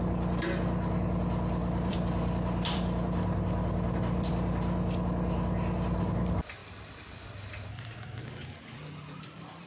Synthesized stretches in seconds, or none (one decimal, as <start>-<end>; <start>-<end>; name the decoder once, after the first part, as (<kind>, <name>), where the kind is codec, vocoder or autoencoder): 1.6-4.3 (vocoder, BigVGAN v2); 6.6-8.2

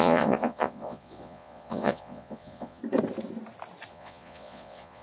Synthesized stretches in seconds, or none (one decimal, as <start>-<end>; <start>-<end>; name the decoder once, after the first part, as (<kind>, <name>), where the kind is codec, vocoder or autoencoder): 0.0-2.8 (vocoder, Vocos); 3.9-5.0

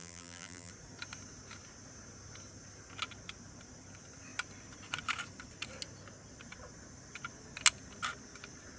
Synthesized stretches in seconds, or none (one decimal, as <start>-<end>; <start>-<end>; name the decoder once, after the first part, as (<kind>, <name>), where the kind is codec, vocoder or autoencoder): 0.0-0.7 (vocoder, BigVGAN v2)

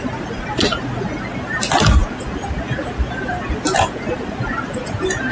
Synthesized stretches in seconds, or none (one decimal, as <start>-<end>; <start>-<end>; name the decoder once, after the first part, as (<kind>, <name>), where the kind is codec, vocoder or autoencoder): none

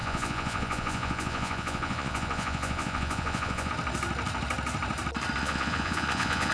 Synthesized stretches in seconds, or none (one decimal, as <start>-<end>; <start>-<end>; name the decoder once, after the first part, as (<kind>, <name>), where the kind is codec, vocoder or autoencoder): 0.0-3.7 (vocoder, Vocos); 5.4-6.5

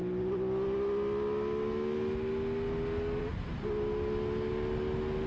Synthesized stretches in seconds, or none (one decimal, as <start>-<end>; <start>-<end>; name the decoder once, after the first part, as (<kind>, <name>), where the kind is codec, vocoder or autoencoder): none

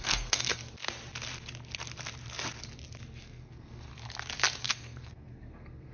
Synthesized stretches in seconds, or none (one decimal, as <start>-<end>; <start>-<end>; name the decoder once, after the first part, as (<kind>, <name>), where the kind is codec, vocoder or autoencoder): 0.0-0.6 (codec, SNAC); 3.2-3.9; 4.6-5.9